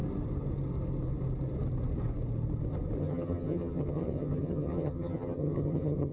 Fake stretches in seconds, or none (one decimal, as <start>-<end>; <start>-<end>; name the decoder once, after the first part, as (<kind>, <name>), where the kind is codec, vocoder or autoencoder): 3.0-6.1 (vocoder, HiFi-GAN)